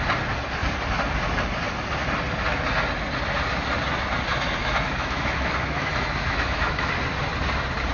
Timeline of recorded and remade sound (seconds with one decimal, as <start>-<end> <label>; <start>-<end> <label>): 0.0-4.6 recorded; 4.6-6.9 remade; 6.9-7.9 recorded